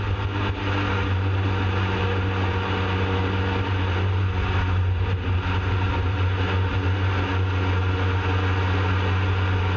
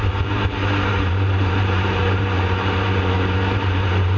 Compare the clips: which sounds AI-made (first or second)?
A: second